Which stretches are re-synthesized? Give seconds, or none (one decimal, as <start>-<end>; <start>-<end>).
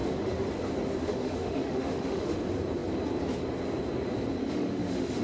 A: 0.0-0.5; 1.0-2.4; 4.4-5.2